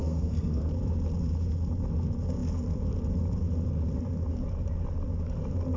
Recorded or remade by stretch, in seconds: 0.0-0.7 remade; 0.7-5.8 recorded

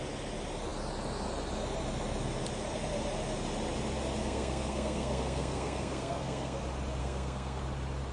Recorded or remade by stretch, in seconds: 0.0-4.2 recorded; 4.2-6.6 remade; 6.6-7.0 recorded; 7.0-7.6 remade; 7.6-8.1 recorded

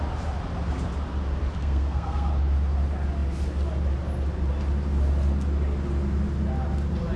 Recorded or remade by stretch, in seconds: 0.0-1.6 recorded; 1.6-2.3 remade; 2.3-7.2 recorded